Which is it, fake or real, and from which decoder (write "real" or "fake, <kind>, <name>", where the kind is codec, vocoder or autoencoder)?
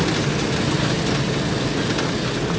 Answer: real